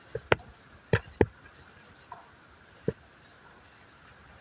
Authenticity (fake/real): real